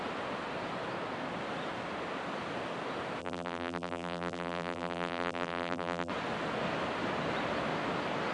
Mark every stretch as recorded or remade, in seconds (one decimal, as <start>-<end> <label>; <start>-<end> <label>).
0.0-3.2 recorded; 3.2-6.1 remade; 6.1-8.3 recorded